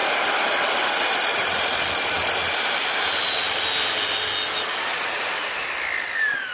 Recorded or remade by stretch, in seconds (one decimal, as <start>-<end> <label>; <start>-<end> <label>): 0.0-6.5 recorded